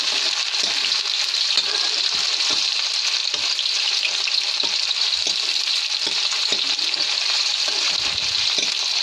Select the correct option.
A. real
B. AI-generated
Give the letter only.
B